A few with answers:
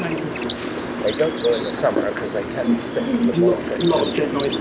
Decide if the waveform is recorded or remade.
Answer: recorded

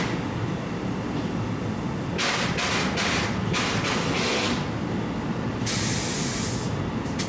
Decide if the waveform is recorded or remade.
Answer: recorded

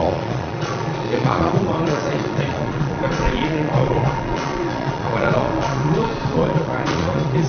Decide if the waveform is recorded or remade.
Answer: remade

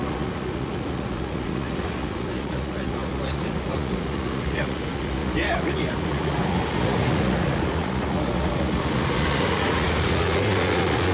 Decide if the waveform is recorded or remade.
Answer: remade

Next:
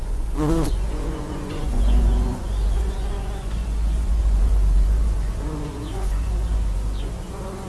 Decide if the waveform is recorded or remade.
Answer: remade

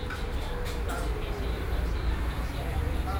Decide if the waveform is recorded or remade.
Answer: recorded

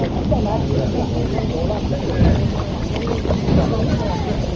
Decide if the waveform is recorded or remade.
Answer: recorded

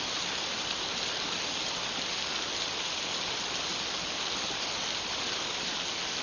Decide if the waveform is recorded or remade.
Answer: recorded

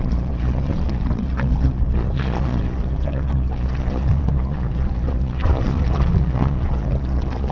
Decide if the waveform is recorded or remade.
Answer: remade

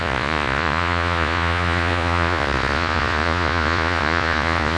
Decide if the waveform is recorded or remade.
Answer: remade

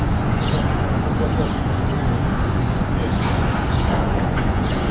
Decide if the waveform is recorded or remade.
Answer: remade